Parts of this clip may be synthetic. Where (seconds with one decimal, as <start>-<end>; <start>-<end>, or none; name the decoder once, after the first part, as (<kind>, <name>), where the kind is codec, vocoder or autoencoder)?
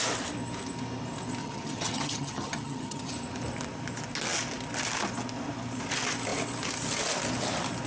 1.4-3.1 (vocoder, HiFi-GAN)